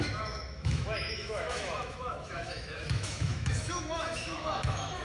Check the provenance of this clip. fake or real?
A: fake